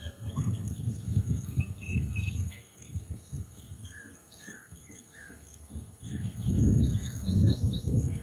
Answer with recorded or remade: remade